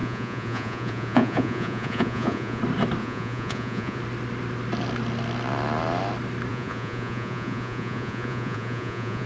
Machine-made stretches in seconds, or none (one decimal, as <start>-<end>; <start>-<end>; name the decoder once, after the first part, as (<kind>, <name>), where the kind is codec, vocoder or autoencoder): 0.0-2.6 (vocoder, Vocos); 3.0-4.0; 6.5-9.3